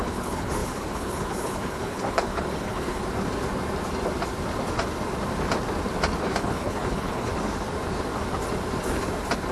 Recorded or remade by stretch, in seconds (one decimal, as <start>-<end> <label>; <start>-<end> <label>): 0.0-3.0 remade; 3.0-6.2 recorded; 6.2-7.3 remade; 7.3-9.5 recorded